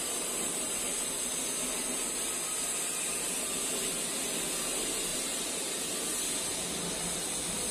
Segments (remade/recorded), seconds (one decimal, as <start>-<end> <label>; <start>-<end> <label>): 0.0-5.1 recorded; 5.1-5.8 remade; 5.8-7.7 recorded